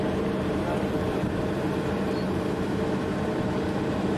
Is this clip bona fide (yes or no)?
no